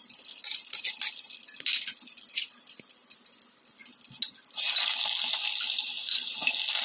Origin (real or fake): real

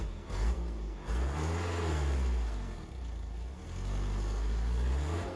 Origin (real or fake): fake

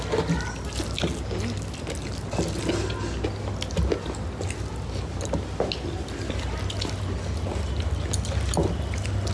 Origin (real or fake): real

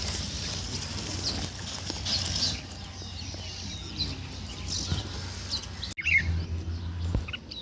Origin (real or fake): real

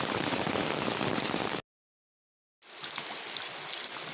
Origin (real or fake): real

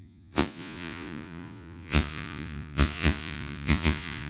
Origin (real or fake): fake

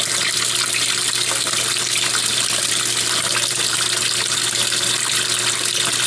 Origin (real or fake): real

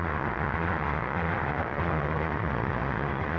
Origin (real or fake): fake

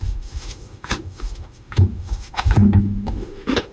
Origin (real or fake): fake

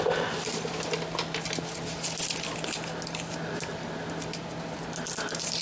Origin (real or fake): real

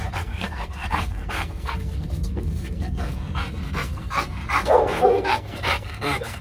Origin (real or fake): fake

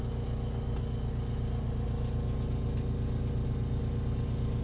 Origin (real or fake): real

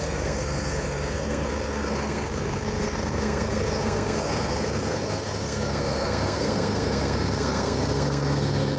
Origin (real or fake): fake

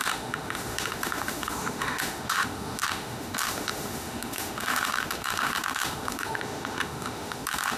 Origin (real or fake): fake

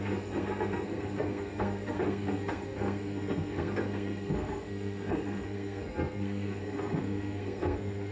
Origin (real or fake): fake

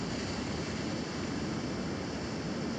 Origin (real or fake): real